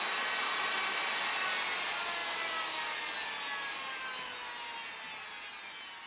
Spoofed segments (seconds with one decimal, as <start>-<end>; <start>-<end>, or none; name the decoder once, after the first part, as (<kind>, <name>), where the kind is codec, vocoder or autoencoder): none

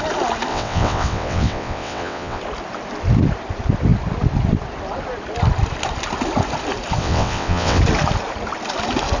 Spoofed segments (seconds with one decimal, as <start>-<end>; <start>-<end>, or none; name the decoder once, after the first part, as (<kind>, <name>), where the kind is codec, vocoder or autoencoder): 0.5-2.4 (vocoder, WaveNeXt); 7.0-7.8

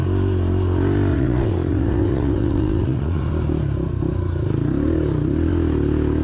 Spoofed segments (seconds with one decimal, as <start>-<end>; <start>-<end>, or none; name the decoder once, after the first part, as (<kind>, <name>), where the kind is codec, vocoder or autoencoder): 1.1-3.3 (vocoder, WaveNeXt)

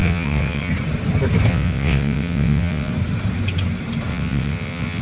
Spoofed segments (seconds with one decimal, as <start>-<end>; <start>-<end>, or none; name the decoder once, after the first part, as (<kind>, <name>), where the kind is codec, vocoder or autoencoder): 0.0-0.7 (vocoder, WaveNeXt); 1.5-2.9; 4.1-5.0